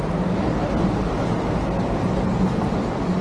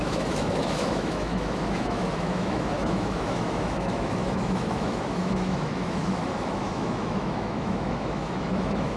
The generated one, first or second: second